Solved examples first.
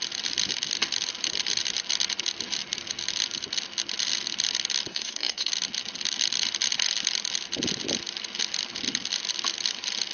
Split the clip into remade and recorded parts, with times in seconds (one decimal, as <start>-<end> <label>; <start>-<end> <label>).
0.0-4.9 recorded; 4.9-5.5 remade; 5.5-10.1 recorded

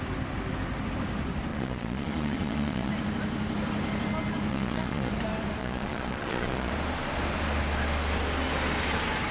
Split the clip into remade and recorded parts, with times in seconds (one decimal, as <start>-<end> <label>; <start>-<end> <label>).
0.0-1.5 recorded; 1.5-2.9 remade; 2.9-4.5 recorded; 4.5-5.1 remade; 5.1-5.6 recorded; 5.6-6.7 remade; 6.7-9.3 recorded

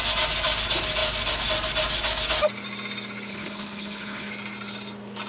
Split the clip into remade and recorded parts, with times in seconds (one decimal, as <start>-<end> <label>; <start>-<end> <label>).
0.0-3.3 recorded; 3.3-4.3 remade; 4.3-5.3 recorded

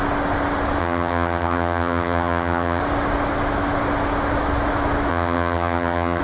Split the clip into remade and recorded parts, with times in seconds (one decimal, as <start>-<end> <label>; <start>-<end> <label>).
0.0-0.8 recorded; 0.8-2.8 remade; 2.8-5.1 recorded; 5.1-6.2 remade

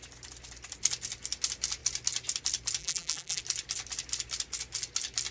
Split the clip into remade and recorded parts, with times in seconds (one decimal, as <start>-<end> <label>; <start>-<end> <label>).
0.0-2.8 recorded; 2.8-3.4 remade; 3.4-5.3 recorded

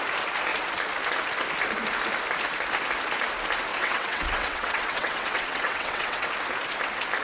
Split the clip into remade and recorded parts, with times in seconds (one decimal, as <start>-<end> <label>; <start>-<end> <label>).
0.0-3.7 recorded; 3.7-6.3 remade; 6.3-7.2 recorded

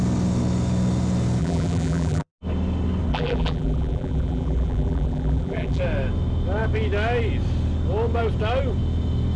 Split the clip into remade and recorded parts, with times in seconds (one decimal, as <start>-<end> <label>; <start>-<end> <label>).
0.0-1.4 recorded; 1.4-2.3 remade; 2.3-3.1 recorded; 3.1-5.8 remade; 5.8-9.4 recorded

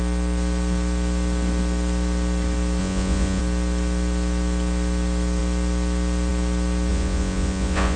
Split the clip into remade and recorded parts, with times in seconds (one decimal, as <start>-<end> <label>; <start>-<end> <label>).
0.0-2.8 recorded; 2.8-3.4 remade; 3.4-6.9 recorded; 6.9-8.0 remade